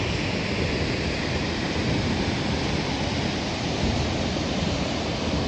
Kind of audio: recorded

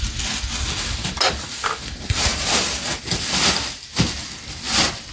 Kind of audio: recorded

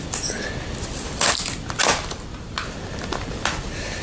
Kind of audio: recorded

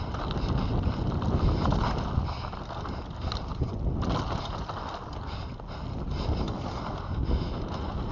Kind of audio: recorded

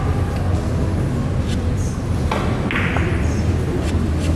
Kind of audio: recorded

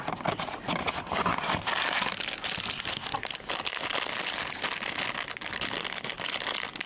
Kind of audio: recorded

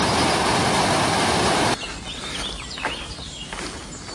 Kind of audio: recorded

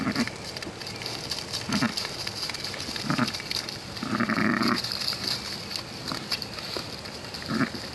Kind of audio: recorded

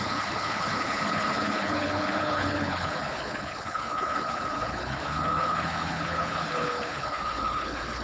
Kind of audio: remade